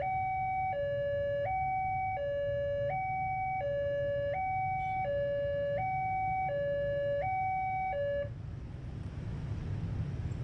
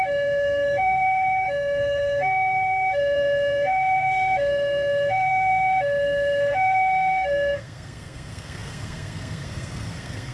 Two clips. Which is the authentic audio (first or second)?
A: first